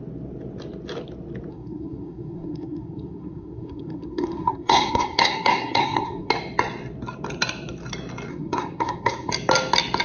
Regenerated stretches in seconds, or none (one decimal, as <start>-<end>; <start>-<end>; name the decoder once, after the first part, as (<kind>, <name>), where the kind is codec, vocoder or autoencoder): 1.5-6.3 (codec, SNAC); 8.3-9.3